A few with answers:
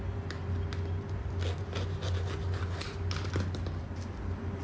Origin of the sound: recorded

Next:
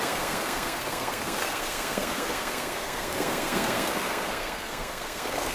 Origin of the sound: remade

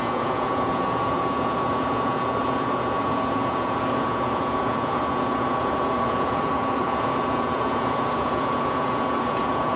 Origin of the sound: remade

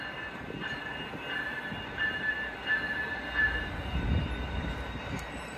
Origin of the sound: remade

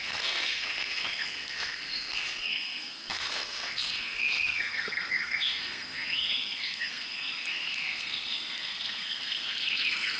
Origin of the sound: remade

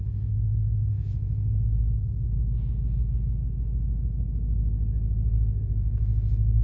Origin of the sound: remade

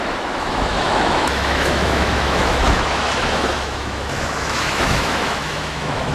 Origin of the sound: remade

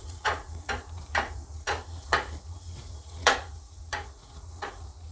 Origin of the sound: remade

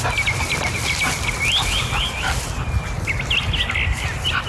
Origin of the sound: recorded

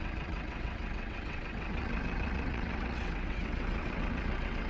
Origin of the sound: remade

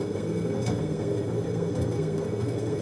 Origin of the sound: remade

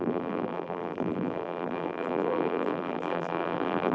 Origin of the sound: remade